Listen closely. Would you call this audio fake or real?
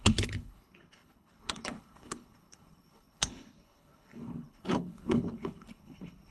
fake